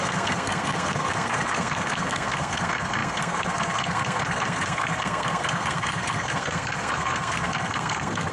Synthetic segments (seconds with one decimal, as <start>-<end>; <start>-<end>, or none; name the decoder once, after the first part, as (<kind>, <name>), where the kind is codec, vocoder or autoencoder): 0.0-8.3 (codec, SNAC)